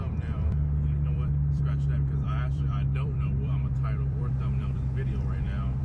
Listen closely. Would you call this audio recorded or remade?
remade